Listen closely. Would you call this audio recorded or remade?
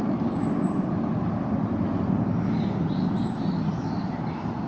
recorded